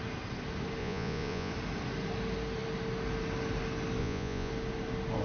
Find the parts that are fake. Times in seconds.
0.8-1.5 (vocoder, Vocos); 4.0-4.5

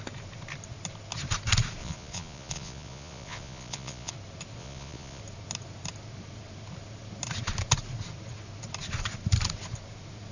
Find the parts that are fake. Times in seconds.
1.8-4.1 (vocoder, Vocos); 4.6-5.2

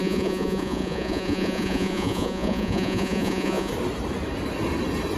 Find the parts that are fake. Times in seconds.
0.0-3.7 (vocoder, Vocos)

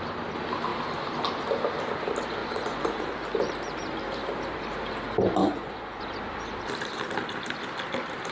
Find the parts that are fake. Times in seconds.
2.4-3.0 (vocoder, Vocos); 5.4-6.0

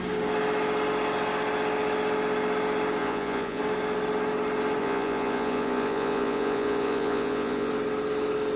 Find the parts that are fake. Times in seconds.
3.0-3.6 (vocoder, Vocos); 4.8-7.7

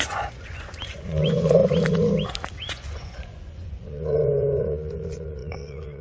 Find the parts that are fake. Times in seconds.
0.0-1.6 (vocoder, Vocos); 2.5-6.0